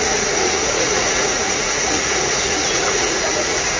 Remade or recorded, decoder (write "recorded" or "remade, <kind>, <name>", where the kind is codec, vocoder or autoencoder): remade, vocoder, Vocos